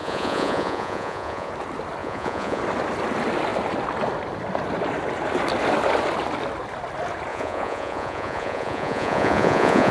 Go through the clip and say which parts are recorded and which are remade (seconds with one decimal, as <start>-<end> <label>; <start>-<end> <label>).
0.0-1.5 remade; 1.5-2.0 recorded; 2.0-2.6 remade; 2.6-7.3 recorded; 7.3-9.9 remade